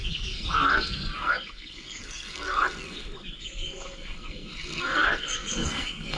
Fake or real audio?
fake